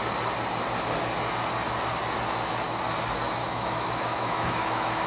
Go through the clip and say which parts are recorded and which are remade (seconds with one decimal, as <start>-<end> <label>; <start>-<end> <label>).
0.0-3.4 recorded; 3.4-5.1 remade